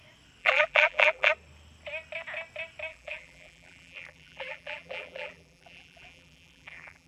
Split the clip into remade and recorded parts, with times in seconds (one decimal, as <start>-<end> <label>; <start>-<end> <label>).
0.0-0.4 recorded; 0.4-1.3 remade; 1.3-2.9 recorded; 2.9-7.1 remade